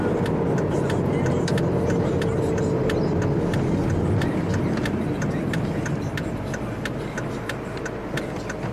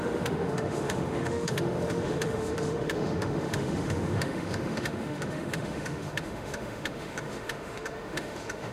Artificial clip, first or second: second